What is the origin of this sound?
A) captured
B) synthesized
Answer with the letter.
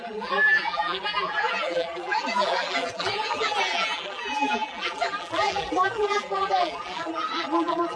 B